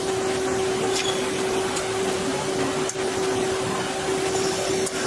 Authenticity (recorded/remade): recorded